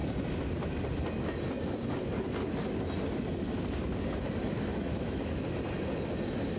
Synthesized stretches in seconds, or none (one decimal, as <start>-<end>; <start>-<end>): 4.7-5.6